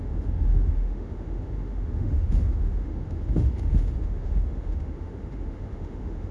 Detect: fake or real fake